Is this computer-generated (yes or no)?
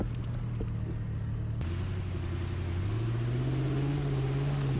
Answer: no